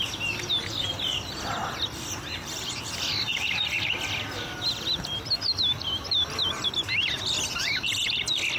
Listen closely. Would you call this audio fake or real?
real